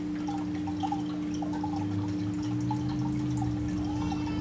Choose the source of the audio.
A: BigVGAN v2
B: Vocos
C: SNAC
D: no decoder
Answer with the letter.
D